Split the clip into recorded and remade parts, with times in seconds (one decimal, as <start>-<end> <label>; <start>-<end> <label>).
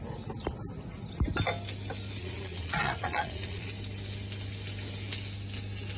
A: 0.0-2.2 recorded; 2.2-3.7 remade; 3.7-6.0 recorded